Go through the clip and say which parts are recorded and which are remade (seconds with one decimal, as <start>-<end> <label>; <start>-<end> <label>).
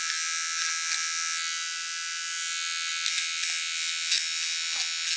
0.0-5.2 recorded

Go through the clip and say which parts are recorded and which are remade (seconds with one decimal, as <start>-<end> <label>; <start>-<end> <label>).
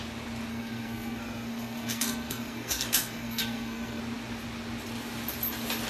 0.0-0.5 recorded; 0.5-4.0 remade; 4.0-5.9 recorded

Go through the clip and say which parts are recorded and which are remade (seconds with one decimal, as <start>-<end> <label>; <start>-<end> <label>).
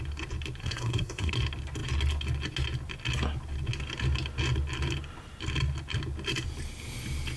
0.0-0.6 recorded; 0.6-1.3 remade; 1.3-7.4 recorded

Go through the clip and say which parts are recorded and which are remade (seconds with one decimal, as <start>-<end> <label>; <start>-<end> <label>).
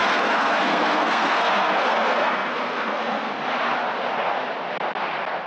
0.0-3.3 remade; 3.3-5.5 recorded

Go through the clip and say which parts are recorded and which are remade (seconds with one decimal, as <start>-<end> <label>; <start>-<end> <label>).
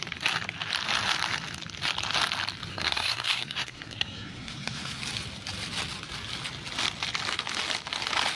0.0-2.7 recorded; 2.7-5.0 remade; 5.0-8.4 recorded